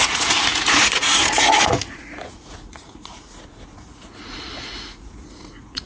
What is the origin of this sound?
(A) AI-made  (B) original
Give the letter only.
A